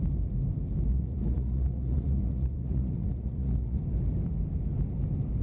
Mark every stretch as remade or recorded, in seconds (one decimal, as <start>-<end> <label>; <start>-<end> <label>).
0.0-0.9 recorded; 0.9-3.8 remade; 3.8-5.4 recorded